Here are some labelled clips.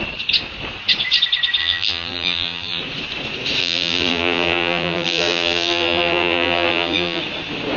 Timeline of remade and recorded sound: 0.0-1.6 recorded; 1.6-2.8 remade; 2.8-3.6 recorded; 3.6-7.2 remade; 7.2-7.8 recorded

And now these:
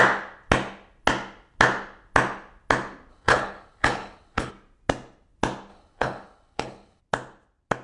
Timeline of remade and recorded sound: 0.0-3.1 recorded; 3.1-4.5 remade; 4.5-5.7 recorded; 5.7-7.0 remade; 7.0-7.8 recorded

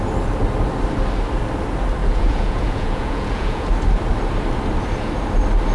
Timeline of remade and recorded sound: 0.0-2.0 recorded; 2.0-3.7 remade; 3.7-5.7 recorded

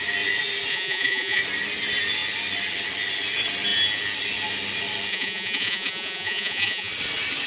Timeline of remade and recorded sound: 0.0-0.7 recorded; 0.7-1.4 remade; 1.4-5.1 recorded; 5.1-6.9 remade; 6.9-7.5 recorded

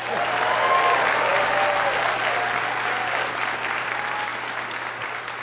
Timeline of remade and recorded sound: 0.0-5.4 recorded

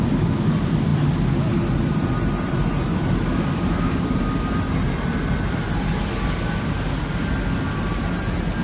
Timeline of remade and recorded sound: 0.0-8.6 recorded